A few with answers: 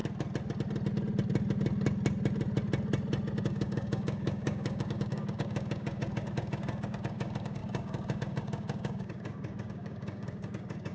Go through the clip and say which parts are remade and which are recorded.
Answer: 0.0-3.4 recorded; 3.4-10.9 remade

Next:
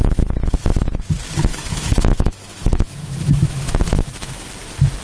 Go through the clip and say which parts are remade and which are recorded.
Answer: 0.0-1.5 recorded; 1.5-4.5 remade; 4.5-5.0 recorded

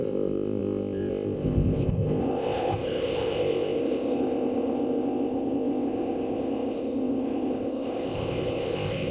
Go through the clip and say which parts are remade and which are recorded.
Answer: 0.0-9.1 remade

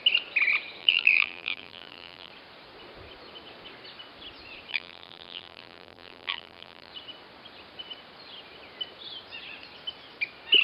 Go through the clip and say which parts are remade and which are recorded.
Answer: 0.0-0.8 recorded; 0.8-2.3 remade; 2.3-4.7 recorded; 4.7-6.9 remade; 6.9-10.6 recorded

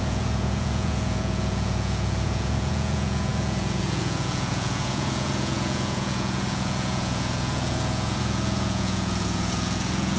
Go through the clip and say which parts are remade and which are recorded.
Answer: 0.0-10.2 remade